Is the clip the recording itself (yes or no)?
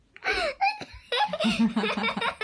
yes